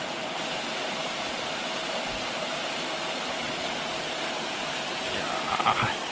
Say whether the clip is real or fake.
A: real